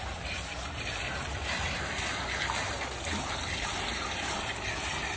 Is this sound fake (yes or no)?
no